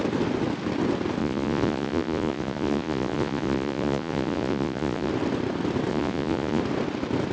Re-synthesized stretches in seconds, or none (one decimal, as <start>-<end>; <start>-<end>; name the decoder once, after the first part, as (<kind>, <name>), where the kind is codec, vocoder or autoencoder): 1.2-5.1 (vocoder, Vocos); 5.9-6.6